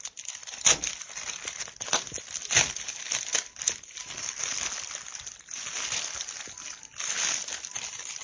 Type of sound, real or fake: real